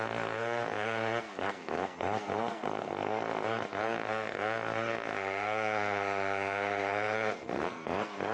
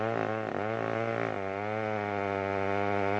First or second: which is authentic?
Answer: second